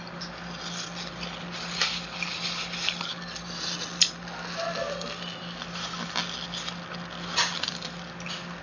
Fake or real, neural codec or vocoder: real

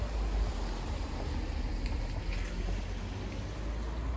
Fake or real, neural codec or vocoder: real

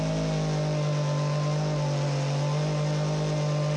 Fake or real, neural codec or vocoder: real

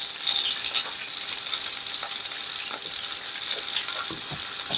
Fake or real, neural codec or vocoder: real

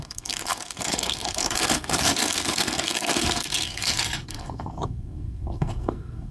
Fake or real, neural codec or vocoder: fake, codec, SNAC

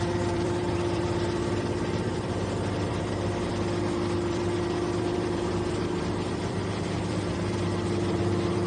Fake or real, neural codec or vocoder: fake, vocoder, BigVGAN v2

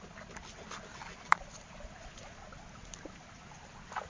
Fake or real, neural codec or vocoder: real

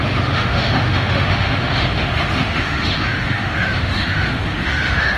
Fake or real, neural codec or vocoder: fake, autoencoder, DAC-VAE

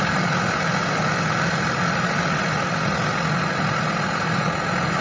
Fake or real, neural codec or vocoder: real